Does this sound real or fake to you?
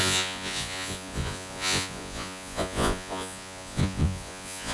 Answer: fake